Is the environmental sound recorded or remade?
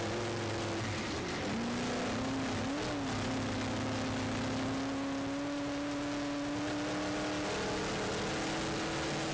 recorded